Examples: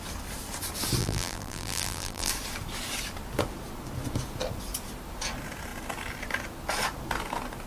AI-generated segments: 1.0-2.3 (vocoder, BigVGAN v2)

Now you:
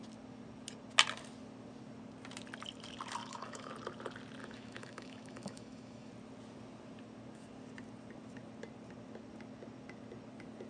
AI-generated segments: 3.2-3.7 (autoencoder, DAC-VAE); 4.4-6.1

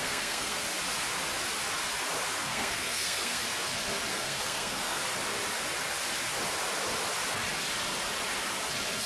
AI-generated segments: 0.0-0.6 (codec, SNAC); 2.5-3.4; 4.1-5.0

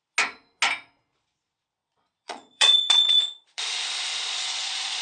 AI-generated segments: 1.8-3.6 (vocoder, Vocos); 4.1-5.0

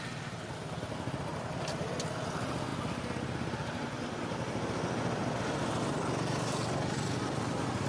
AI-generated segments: 1.3-1.9 (vocoder, BigVGAN v2)